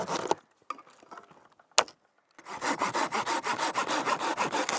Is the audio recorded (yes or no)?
yes